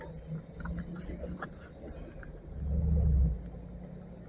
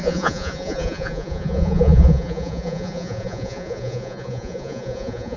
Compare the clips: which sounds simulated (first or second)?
second